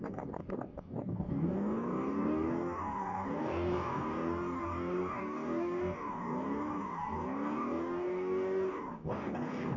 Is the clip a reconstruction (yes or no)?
yes